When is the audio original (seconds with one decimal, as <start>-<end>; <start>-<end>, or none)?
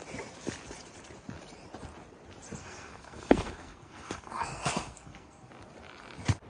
0.0-2.6; 5.5-6.5